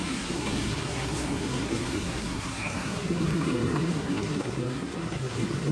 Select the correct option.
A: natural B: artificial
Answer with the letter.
B